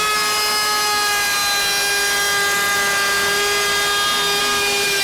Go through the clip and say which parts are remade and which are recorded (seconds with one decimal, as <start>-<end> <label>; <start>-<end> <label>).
0.0-5.0 recorded